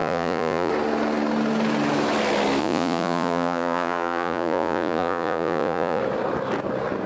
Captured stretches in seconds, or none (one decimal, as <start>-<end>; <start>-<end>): 0.7-2.6; 6.0-7.1